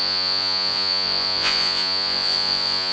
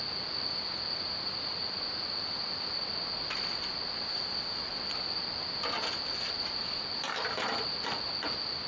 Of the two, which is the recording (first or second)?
second